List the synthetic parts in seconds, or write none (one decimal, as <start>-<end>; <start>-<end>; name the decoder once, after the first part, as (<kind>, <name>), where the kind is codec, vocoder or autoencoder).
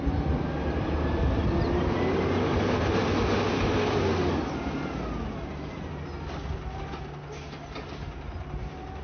none